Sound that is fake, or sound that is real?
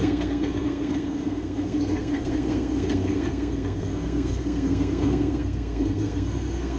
fake